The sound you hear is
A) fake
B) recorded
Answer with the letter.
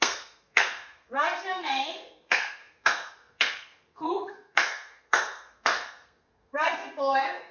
A